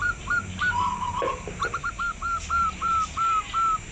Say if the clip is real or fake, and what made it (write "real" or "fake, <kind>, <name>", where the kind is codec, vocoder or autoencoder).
fake, vocoder, BigVGAN v2